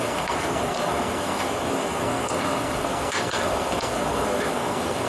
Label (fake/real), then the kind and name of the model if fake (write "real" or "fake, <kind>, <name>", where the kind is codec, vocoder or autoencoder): fake, codec, SNAC